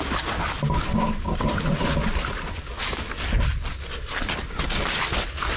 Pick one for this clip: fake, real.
real